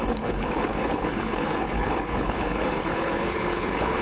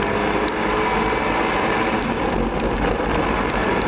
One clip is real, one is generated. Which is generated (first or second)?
first